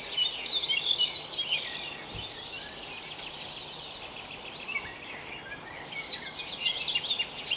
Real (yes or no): yes